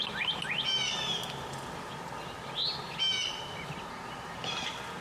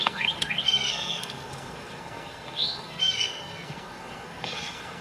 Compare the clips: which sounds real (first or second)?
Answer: first